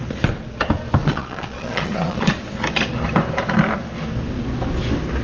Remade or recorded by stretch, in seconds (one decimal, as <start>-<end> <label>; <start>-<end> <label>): 0.0-1.0 recorded; 1.0-2.3 remade; 2.3-5.2 recorded